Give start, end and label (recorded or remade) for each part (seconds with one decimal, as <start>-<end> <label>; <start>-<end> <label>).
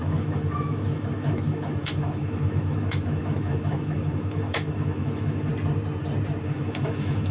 0.0-5.5 remade; 5.5-6.4 recorded; 6.4-7.3 remade